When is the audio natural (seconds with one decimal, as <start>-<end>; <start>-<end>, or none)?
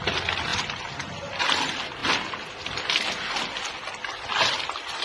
0.0-5.0